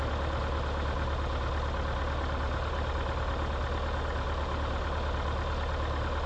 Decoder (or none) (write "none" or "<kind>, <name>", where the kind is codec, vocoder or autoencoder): none